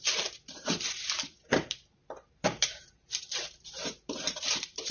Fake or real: fake